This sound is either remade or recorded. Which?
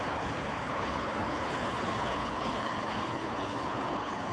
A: remade